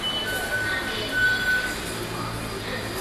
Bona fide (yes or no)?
yes